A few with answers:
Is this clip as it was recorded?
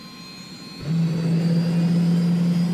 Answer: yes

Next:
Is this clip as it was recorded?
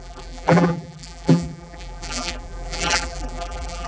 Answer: no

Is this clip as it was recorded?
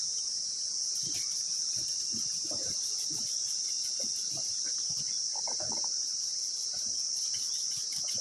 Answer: yes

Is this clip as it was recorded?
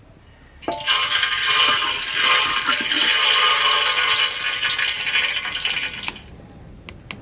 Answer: yes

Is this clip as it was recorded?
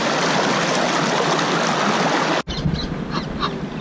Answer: yes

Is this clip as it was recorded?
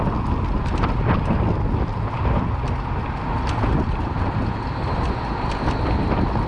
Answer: yes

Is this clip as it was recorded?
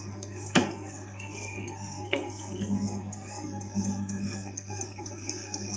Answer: no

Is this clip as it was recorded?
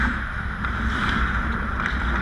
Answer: yes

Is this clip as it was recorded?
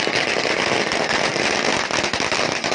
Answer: yes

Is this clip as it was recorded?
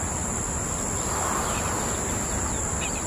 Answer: yes